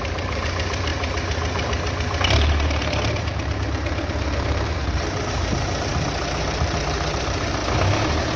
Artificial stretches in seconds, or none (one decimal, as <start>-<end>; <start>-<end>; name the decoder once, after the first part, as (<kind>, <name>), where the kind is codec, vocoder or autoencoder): 0.0-7.6 (vocoder, BigVGAN v2)